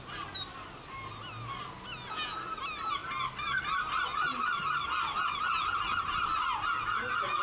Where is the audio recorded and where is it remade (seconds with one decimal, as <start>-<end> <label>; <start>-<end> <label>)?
0.0-7.4 recorded

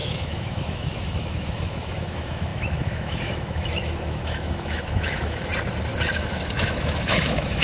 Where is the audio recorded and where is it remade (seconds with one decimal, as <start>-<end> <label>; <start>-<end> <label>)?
0.0-5.5 remade; 5.5-6.1 recorded; 6.1-7.6 remade

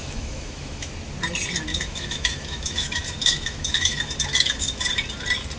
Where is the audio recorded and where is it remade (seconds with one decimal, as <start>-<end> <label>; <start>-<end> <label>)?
0.0-0.9 remade; 0.9-1.7 recorded; 1.7-4.9 remade; 4.9-5.6 recorded

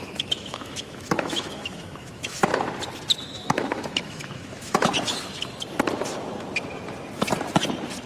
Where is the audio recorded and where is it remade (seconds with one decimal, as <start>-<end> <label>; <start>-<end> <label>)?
0.0-2.5 remade; 2.5-3.2 recorded; 3.2-4.9 remade; 4.9-8.1 recorded